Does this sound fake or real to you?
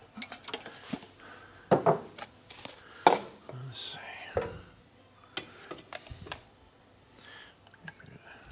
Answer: real